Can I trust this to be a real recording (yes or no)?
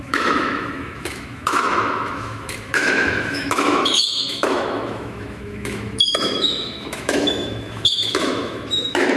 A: no